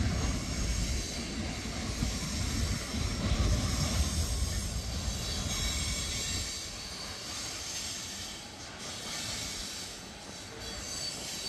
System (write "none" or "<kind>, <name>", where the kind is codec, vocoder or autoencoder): none